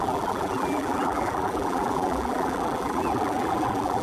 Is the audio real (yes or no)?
no